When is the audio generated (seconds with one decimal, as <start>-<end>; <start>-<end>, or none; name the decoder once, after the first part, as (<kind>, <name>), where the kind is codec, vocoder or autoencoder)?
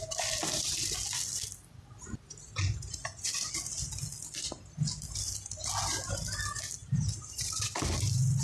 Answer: none